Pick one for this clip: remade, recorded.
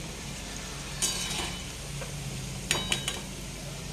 recorded